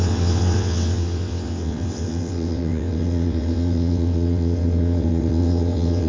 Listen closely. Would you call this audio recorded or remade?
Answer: remade